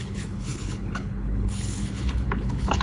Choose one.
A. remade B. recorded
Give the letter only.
A